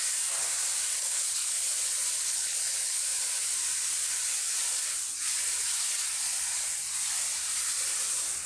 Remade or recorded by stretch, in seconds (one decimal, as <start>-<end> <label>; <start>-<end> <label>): 0.0-1.0 recorded; 1.0-1.7 remade; 1.7-2.2 recorded; 2.2-3.0 remade; 3.0-8.5 recorded